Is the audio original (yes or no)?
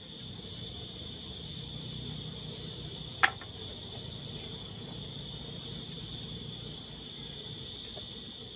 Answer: yes